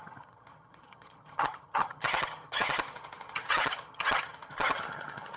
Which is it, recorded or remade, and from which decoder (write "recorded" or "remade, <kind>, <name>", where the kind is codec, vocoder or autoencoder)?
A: remade, vocoder, HiFi-GAN